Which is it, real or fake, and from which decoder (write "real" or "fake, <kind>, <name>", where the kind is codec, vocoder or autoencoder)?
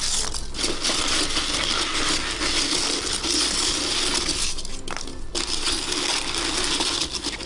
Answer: real